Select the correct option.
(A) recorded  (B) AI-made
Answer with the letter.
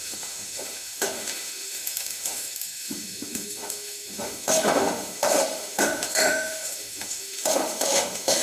B